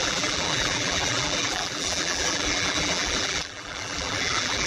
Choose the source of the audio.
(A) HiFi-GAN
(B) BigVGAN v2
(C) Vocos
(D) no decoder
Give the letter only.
B